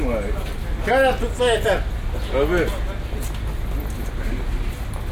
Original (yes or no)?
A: yes